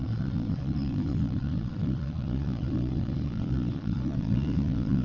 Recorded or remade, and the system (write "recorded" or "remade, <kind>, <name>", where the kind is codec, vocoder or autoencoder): remade, vocoder, Vocos